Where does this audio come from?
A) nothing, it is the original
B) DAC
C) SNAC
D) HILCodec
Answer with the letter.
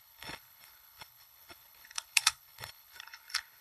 D